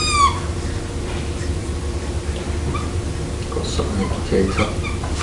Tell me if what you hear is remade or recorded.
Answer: recorded